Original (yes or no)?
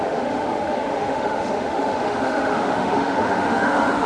no